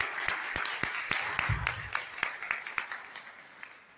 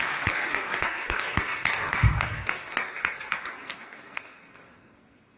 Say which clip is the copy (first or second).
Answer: second